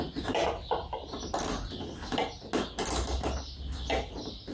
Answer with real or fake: real